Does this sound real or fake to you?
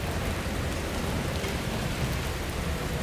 real